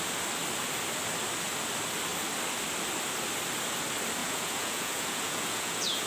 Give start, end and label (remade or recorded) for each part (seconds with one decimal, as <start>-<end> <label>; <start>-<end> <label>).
0.0-4.2 recorded; 4.2-6.1 remade